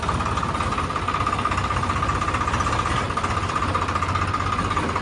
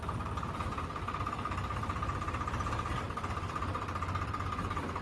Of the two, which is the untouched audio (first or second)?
first